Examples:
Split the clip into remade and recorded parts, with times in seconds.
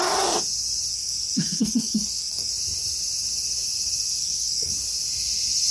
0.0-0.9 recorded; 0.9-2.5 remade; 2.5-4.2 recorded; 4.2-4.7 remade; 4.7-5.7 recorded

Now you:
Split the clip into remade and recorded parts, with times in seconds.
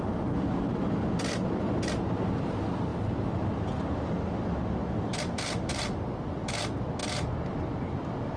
0.0-8.4 recorded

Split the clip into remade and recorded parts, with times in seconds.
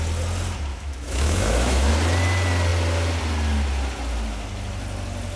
0.0-0.7 recorded; 0.7-1.9 remade; 1.9-5.4 recorded